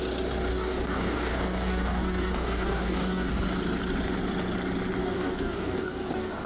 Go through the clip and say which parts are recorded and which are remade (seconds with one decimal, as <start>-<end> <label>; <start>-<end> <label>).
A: 0.0-0.5 recorded; 0.5-3.4 remade; 3.4-5.0 recorded; 5.0-6.5 remade